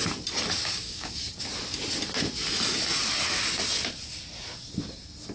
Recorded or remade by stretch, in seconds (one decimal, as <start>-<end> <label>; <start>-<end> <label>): 0.0-0.6 recorded; 0.6-1.4 remade; 1.4-5.3 recorded

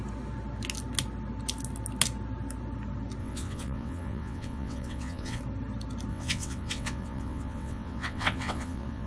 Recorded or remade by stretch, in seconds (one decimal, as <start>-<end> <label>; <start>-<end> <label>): 0.0-3.2 recorded; 3.2-5.4 remade; 5.4-6.1 recorded; 6.1-9.1 remade

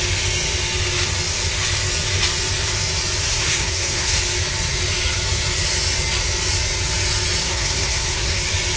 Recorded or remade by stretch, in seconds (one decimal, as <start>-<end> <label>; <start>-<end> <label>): 0.0-3.3 recorded; 3.3-4.2 remade; 4.2-7.4 recorded; 7.4-8.4 remade; 8.4-8.8 recorded